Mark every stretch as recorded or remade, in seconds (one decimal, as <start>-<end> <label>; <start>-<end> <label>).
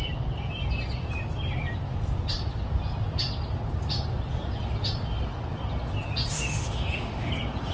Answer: 0.0-6.3 recorded; 6.3-7.3 remade; 7.3-7.7 recorded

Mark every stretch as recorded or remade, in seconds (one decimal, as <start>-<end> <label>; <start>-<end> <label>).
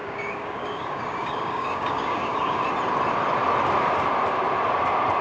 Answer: 0.0-2.6 remade; 2.6-5.2 recorded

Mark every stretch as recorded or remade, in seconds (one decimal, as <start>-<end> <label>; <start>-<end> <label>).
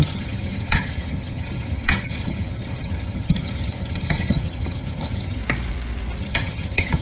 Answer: 0.0-5.4 remade; 5.4-6.2 recorded; 6.2-7.0 remade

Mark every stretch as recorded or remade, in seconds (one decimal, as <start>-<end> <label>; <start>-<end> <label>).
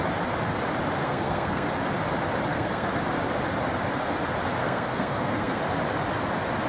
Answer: 0.0-1.0 recorded; 1.0-1.7 remade; 1.7-2.5 recorded; 2.5-3.0 remade; 3.0-4.6 recorded; 4.6-5.6 remade; 5.6-6.7 recorded